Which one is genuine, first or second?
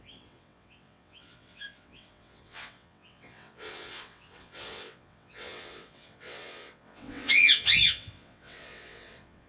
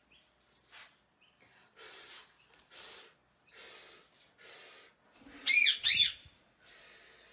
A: second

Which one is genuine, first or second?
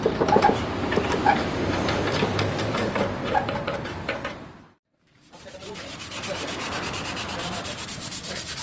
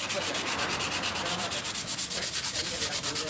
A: second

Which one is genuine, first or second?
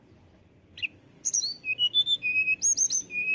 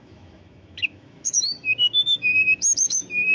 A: first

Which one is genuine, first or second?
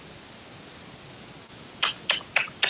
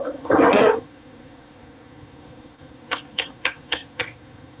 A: first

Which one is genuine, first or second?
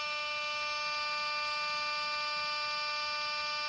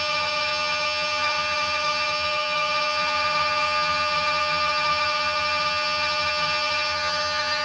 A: first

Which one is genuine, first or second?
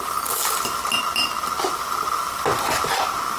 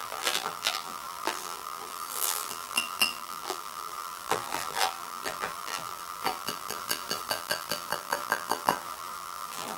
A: first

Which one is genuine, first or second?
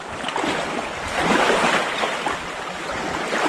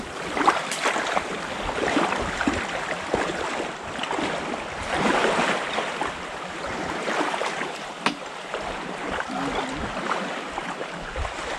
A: first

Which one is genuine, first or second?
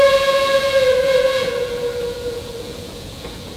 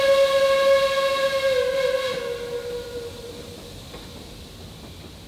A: second